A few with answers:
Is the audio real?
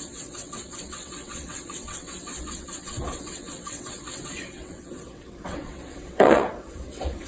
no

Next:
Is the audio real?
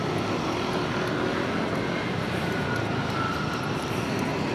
yes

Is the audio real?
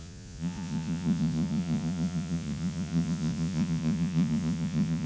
no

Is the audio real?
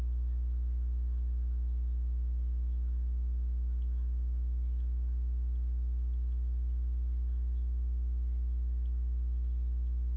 yes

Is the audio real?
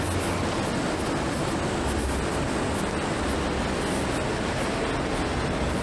yes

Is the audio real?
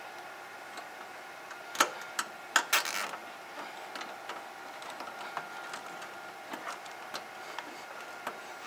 yes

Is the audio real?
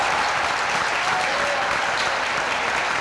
yes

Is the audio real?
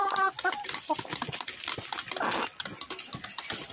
yes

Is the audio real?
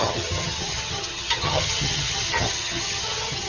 no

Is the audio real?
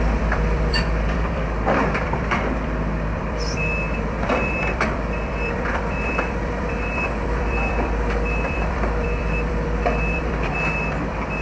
no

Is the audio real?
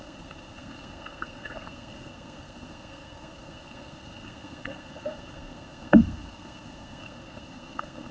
no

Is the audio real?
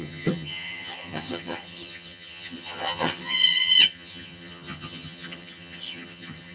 no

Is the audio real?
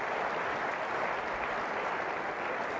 no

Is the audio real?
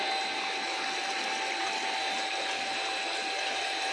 yes